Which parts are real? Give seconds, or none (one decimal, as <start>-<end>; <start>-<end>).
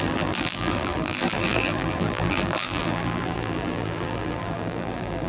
none